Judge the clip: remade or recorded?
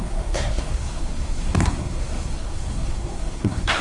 remade